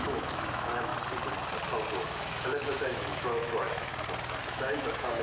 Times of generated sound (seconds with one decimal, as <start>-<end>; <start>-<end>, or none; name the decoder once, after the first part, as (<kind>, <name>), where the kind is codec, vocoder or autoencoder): 0.0-0.9 (autoencoder, DAC-VAE); 2.0-3.9; 4.4-5.2

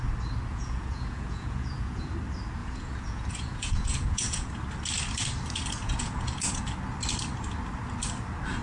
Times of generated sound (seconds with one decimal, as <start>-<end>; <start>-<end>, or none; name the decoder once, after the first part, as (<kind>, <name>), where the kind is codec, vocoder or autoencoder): 0.5-2.1 (vocoder, Vocos); 2.6-4.5; 5.8-6.6

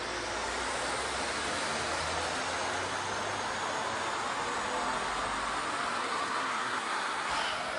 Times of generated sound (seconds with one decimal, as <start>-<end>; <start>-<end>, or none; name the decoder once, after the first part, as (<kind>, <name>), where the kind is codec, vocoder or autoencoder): 6.0-7.3 (codec, SNAC)

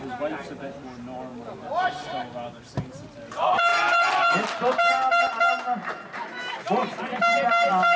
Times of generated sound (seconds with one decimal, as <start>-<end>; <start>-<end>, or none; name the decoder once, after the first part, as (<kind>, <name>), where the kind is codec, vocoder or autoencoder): none

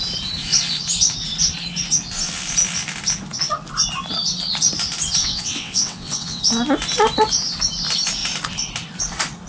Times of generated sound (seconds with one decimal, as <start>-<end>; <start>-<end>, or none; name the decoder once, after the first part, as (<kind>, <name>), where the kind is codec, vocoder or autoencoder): 5.2-6.4 (vocoder, WaveNeXt)

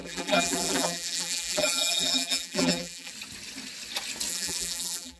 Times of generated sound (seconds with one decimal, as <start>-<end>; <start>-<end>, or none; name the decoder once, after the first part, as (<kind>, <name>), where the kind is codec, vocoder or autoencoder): 0.0-3.1 (vocoder, BigVGAN v2); 4.3-5.2